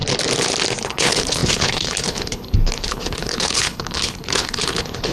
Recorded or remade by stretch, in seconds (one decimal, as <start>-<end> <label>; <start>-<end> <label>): 0.0-0.8 recorded; 0.8-5.1 remade